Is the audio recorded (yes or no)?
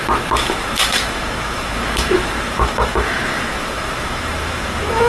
no